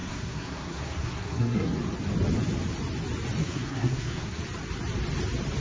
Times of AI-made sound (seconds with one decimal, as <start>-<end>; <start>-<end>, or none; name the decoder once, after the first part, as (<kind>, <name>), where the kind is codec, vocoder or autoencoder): 0.0-1.7 (codec, SNAC); 3.4-4.4